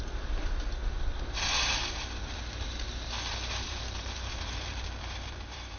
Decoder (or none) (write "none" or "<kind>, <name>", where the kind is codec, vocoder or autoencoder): vocoder, BigVGAN v2